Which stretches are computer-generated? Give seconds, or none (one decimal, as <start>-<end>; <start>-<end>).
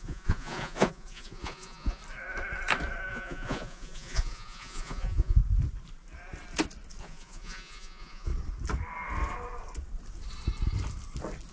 0.0-2.0; 3.1-5.4; 7.0-8.3